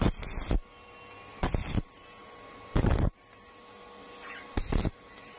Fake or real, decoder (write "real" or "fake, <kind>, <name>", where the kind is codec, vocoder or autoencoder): real